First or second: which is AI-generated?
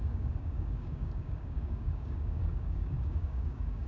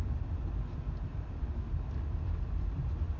first